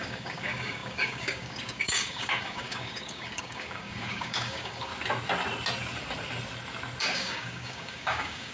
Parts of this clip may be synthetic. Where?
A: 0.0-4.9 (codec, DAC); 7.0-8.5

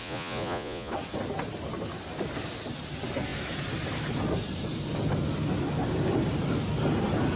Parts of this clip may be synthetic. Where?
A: 0.0-0.9 (vocoder, Vocos)

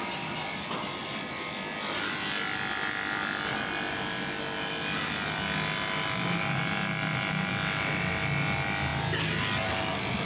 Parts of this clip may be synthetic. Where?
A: none

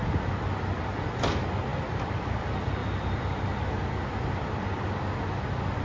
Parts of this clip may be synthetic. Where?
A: 1.7-2.2 (vocoder, BigVGAN v2)

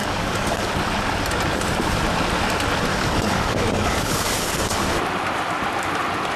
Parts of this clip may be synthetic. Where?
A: 0.0-0.7 (codec, DAC); 2.9-5.0

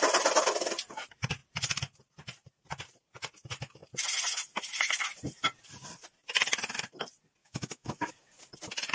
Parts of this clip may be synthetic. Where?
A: 7.4-8.1 (autoencoder, DAC-VAE)